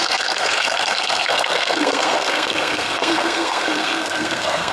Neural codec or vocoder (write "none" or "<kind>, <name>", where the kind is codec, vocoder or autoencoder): codec, SNAC